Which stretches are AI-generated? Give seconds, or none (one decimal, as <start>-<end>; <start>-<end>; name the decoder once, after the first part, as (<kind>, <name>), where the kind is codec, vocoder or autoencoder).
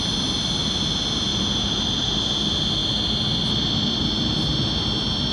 1.3-2.2 (vocoder, BigVGAN v2)